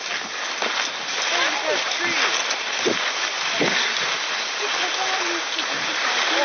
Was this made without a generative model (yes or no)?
yes